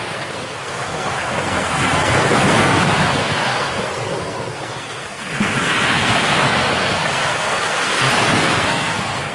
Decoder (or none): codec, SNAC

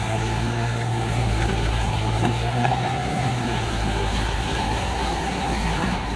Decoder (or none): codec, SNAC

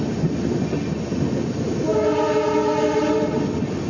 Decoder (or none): none